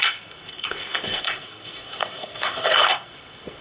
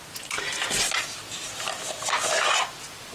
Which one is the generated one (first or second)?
first